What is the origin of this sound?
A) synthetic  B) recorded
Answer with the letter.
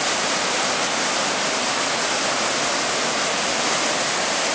B